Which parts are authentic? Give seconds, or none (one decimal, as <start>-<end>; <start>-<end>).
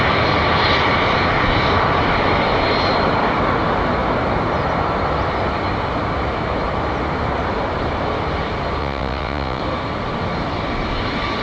0.0-8.8; 9.6-11.4